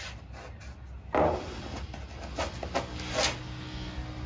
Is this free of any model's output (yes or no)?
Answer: yes